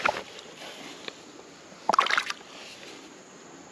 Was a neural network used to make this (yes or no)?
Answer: no